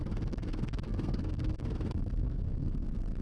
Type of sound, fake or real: fake